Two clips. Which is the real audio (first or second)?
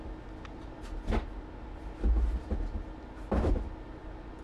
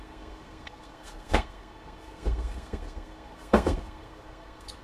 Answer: first